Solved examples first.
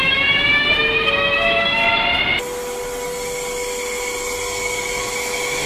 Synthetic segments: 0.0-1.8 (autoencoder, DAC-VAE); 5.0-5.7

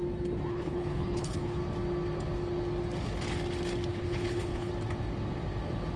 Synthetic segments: 0.5-1.6 (codec, HILCodec); 3.9-4.7

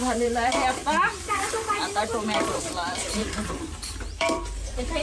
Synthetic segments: 0.0-0.8 (vocoder, BigVGAN v2); 2.6-5.0

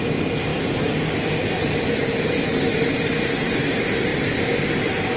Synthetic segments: 0.5-2.7 (vocoder, BigVGAN v2); 4.1-5.2